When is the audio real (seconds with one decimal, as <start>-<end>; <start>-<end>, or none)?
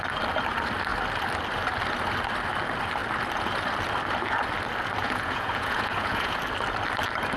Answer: 0.0-5.0; 6.4-7.4